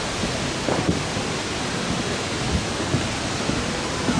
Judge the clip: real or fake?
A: real